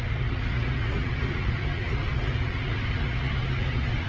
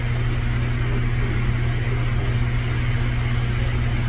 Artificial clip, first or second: first